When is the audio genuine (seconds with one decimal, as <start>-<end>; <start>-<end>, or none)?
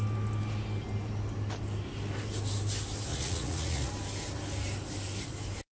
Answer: 0.0-3.1; 3.9-5.7